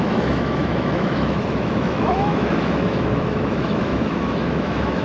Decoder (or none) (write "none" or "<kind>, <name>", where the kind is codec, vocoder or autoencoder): autoencoder, DAC-VAE